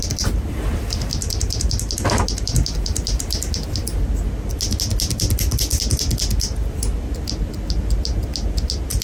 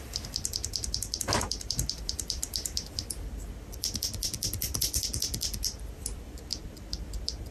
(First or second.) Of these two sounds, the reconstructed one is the second